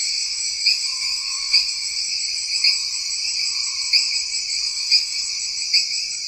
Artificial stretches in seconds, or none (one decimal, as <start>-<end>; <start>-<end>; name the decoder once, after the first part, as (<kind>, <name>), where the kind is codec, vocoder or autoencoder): 0.0-2.1 (autoencoder, DAC-VAE); 4.7-5.2

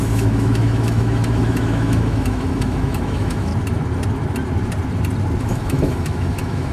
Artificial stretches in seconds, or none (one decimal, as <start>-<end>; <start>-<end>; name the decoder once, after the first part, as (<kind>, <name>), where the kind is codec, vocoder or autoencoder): 0.0-3.5 (autoencoder, DAC-VAE); 5.4-6.7

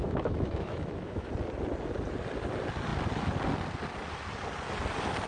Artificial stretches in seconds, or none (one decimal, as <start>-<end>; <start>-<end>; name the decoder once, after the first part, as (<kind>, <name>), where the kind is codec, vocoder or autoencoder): 0.0-1.3 (autoencoder, DAC-VAE)

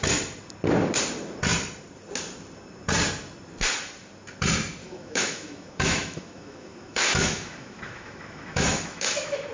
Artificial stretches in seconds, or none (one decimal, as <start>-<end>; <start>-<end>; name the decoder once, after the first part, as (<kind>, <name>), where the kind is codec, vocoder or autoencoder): 4.8-9.5 (autoencoder, DAC-VAE)

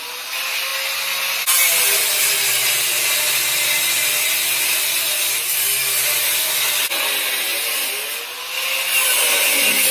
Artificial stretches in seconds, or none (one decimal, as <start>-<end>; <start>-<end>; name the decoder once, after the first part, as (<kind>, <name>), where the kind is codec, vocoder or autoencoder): none